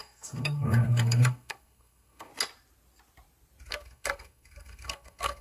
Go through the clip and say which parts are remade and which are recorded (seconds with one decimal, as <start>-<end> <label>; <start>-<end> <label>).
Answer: 0.0-2.3 remade; 2.3-3.7 recorded; 3.7-5.4 remade